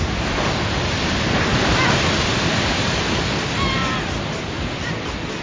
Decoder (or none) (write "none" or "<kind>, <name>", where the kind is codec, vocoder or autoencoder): none